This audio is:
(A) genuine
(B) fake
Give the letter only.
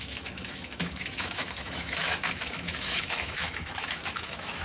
B